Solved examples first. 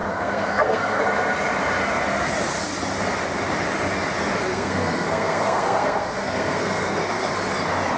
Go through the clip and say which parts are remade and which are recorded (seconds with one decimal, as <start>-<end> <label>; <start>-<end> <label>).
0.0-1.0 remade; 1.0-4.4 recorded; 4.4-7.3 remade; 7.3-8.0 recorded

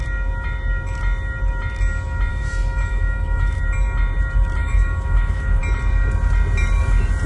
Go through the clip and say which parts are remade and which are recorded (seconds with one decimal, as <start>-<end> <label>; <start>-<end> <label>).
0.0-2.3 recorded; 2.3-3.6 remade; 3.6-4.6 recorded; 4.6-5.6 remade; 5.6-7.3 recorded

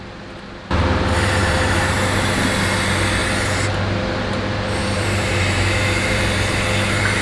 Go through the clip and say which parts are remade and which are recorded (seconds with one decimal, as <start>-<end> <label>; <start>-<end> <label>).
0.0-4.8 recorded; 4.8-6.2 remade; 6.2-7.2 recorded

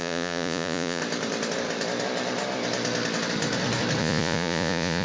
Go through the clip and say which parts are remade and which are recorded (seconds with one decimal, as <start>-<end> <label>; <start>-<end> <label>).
0.0-1.0 remade; 1.0-4.0 recorded; 4.0-5.0 remade

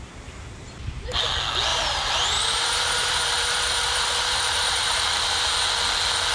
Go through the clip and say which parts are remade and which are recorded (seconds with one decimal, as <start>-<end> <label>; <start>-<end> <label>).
0.0-1.7 recorded; 1.7-5.5 remade; 5.5-6.3 recorded

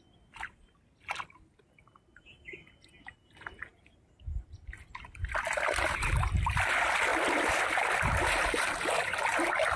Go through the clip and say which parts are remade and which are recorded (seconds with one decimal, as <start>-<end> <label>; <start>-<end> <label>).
0.0-9.8 recorded

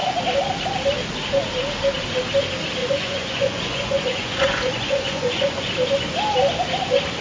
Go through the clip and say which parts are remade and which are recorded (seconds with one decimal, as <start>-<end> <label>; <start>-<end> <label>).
0.0-2.8 recorded; 2.8-5.7 remade; 5.7-7.2 recorded

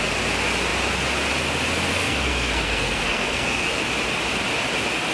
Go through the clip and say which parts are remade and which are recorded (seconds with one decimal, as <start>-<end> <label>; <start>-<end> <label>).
0.0-1.9 recorded; 1.9-3.8 remade; 3.8-5.1 recorded